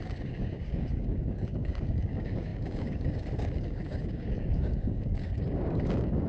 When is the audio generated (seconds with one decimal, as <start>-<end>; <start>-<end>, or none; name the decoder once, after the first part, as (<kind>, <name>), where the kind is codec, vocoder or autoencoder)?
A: 0.0-6.3 (codec, DAC)